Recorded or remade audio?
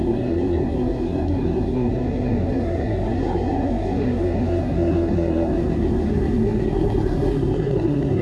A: remade